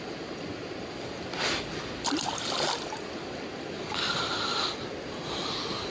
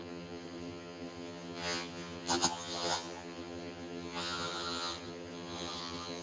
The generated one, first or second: second